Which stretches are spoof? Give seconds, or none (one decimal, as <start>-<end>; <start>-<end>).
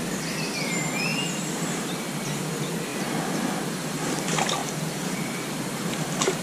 4.6-6.4